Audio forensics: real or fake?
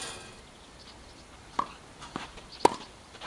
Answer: real